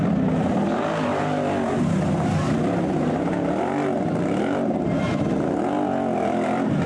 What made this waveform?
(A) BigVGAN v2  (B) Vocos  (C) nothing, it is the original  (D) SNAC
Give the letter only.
C